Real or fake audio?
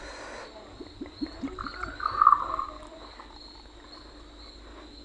real